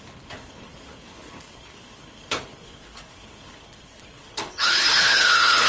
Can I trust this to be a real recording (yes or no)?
no